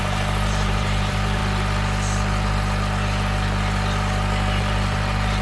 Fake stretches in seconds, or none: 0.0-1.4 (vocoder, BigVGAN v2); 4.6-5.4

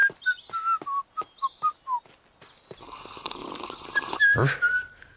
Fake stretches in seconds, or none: none

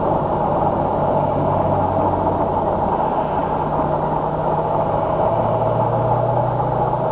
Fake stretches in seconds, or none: none

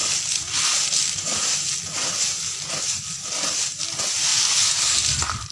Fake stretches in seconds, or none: none

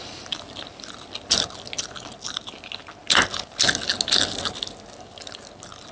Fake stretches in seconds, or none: none

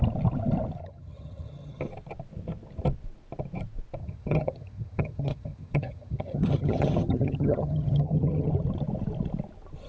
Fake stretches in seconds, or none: 0.8-1.8 (vocoder, HiFi-GAN); 4.0-8.5

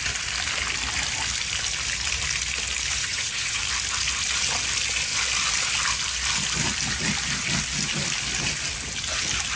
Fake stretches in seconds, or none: 3.0-3.6 (vocoder, HiFi-GAN)

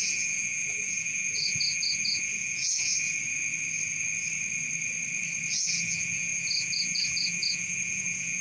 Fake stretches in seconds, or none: 0.0-2.9 (vocoder, Vocos); 5.5-8.4